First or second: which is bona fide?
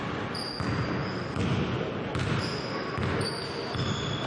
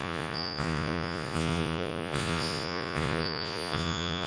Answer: first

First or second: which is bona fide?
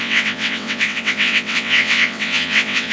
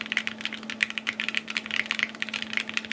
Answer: second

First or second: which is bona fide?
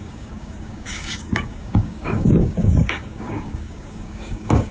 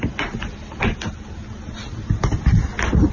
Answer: second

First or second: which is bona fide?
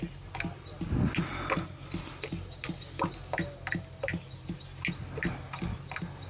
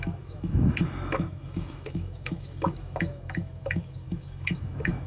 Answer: first